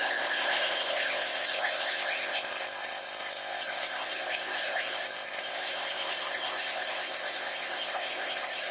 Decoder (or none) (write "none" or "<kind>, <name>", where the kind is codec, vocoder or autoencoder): codec, ZipCodec